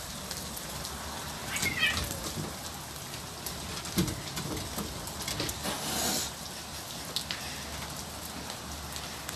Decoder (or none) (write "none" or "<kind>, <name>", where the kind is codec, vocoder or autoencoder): none